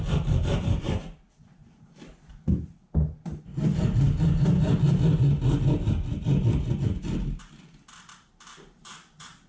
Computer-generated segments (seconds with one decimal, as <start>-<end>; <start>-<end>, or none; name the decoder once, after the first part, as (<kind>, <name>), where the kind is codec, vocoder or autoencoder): 0.0-2.8 (vocoder, BigVGAN v2); 7.9-9.5